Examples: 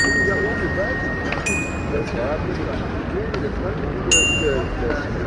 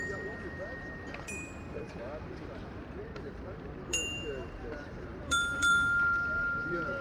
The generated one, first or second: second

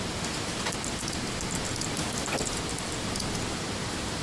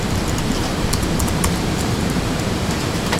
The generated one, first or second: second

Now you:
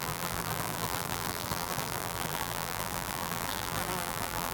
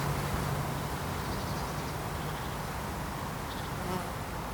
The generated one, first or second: first